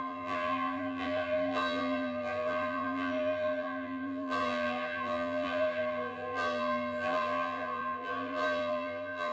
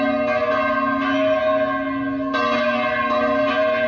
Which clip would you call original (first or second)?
second